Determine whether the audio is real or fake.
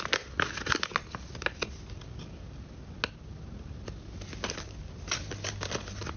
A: real